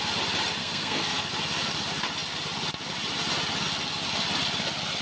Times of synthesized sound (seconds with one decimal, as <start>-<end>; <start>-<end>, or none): 0.6-1.3